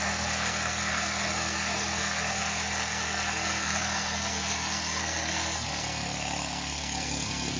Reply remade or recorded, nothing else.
remade